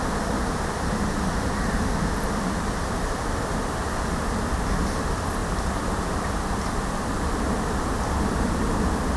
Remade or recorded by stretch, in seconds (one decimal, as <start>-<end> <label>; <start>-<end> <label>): 0.0-9.2 recorded